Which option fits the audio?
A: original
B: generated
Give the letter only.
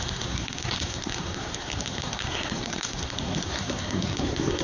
B